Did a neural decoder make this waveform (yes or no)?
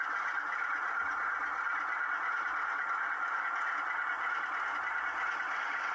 no